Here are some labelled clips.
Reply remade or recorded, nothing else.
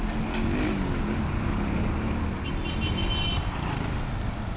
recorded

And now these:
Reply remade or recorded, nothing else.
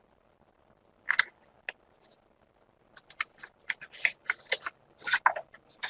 recorded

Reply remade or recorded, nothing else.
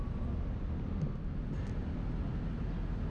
recorded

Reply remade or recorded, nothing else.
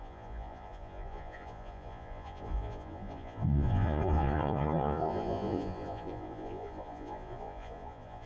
remade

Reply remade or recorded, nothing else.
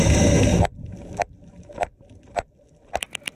recorded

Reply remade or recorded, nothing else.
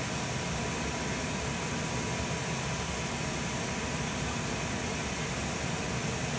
recorded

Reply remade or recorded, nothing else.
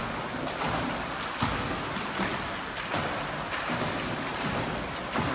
recorded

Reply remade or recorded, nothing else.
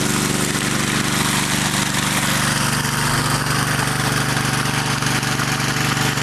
recorded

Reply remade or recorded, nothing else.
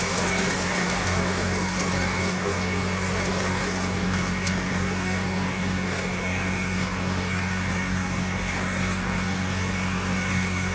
remade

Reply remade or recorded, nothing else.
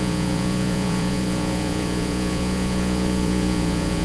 remade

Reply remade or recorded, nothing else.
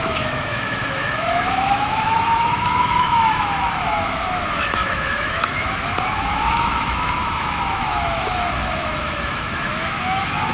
remade